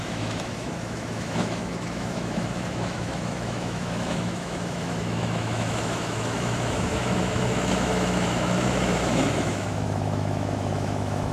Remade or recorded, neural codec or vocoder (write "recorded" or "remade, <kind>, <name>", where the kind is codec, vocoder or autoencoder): remade, autoencoder, DAC-VAE